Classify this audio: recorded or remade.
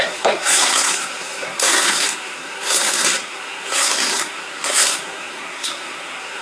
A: remade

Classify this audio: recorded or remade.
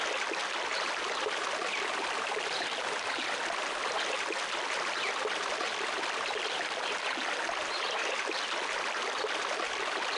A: recorded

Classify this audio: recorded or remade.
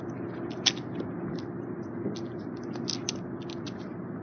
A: recorded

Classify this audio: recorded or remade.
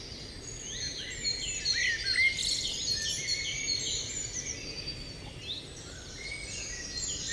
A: recorded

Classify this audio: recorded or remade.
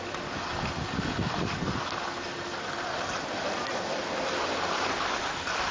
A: recorded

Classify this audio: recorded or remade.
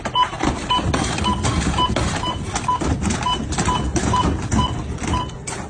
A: recorded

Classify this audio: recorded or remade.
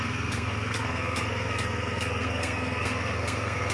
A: remade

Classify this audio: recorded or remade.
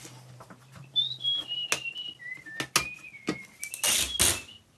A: recorded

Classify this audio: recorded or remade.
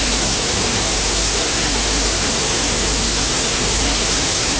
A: remade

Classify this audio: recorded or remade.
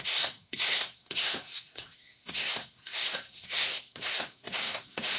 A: remade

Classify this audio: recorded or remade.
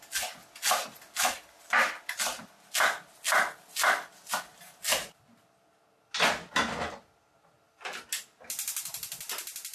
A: recorded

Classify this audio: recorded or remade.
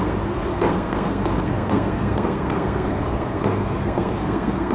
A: remade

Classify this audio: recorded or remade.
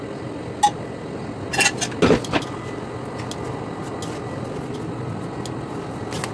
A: recorded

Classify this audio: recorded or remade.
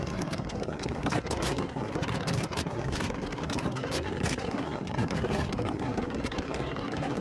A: remade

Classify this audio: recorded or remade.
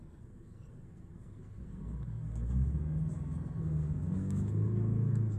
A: remade